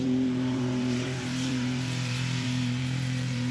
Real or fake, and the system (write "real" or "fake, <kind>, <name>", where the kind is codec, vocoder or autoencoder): fake, vocoder, BigVGAN v2